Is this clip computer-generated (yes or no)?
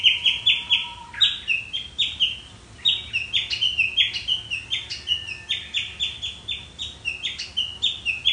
no